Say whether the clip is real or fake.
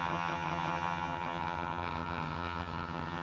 fake